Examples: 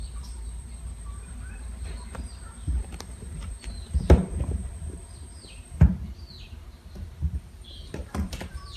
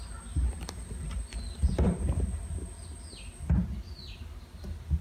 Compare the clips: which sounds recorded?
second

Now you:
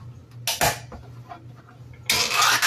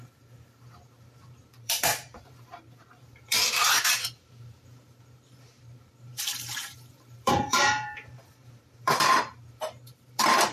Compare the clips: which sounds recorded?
first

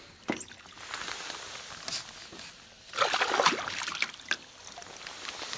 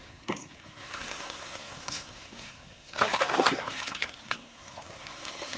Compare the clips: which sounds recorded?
first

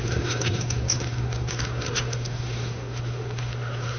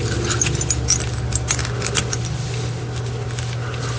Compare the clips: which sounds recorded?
second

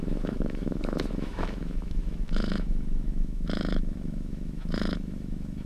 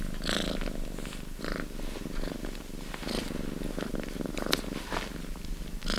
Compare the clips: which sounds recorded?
second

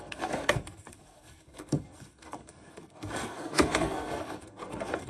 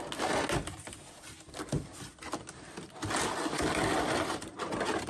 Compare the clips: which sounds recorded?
second